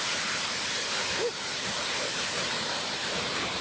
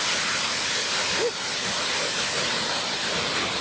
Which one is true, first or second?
second